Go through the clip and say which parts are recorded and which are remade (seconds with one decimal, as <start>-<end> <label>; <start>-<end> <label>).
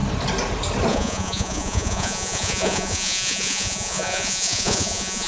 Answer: 0.0-0.9 recorded; 0.9-5.3 remade